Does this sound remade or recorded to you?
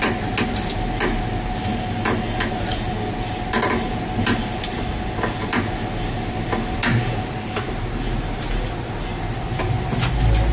recorded